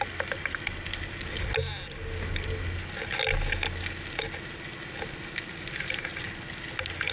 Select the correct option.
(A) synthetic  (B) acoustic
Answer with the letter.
B